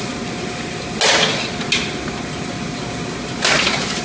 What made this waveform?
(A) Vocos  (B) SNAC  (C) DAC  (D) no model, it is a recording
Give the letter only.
D